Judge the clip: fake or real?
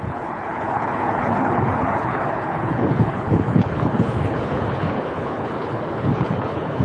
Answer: fake